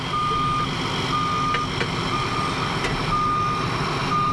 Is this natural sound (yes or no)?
yes